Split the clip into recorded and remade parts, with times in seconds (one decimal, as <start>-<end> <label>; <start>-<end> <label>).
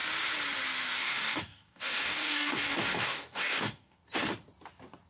0.0-1.0 recorded; 1.0-4.0 remade; 4.0-5.1 recorded